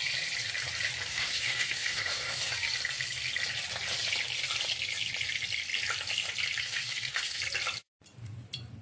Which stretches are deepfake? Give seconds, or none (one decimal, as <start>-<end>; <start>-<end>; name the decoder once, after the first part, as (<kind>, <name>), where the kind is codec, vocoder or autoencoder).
1.1-2.5 (codec, SNAC); 6.6-7.4

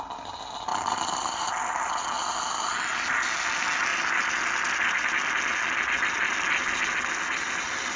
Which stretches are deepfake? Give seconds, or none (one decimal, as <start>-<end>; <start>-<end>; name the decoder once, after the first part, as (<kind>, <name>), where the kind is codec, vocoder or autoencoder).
0.7-1.4 (vocoder, BigVGAN v2); 3.9-5.4

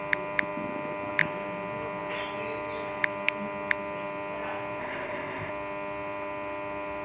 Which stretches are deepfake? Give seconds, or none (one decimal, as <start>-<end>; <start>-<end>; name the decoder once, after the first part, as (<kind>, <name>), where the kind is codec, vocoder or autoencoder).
4.8-5.5 (codec, ZipCodec)

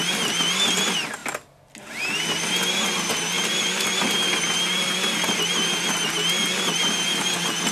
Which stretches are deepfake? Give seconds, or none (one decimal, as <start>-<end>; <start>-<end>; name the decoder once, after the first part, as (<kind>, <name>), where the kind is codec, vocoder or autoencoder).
none

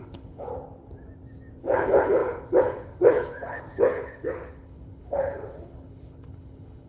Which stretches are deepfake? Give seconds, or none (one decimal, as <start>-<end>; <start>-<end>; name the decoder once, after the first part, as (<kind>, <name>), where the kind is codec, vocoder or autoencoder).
0.0-0.5 (codec, HILCodec); 1.6-6.9

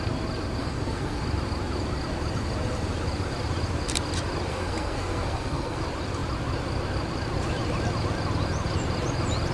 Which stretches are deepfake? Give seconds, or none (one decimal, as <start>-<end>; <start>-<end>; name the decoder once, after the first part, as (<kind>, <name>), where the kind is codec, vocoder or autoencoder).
0.6-1.2 (codec, SNAC); 4.5-5.8

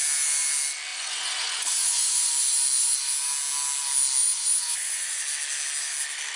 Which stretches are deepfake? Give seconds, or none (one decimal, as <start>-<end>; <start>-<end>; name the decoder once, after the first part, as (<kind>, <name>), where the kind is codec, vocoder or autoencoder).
0.9-2.3 (vocoder, Vocos); 4.2-5.2

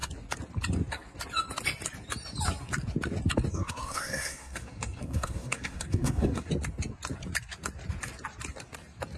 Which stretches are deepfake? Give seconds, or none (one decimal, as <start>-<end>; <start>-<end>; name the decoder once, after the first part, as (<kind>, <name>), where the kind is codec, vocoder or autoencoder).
3.5-6.5 (codec, SNAC)